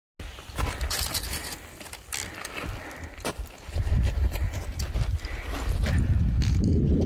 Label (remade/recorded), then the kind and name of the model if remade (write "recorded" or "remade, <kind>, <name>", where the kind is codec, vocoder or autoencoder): recorded